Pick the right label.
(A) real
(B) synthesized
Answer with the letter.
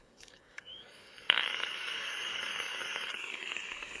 B